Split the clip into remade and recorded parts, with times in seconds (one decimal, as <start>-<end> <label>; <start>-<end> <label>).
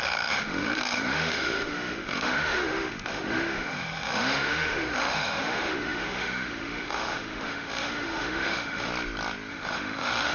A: 0.0-8.9 remade; 8.9-9.5 recorded; 9.5-10.3 remade